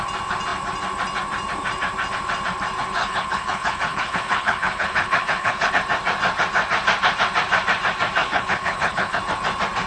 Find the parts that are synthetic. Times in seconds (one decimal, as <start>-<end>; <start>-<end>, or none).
3.0-5.7; 8.2-9.2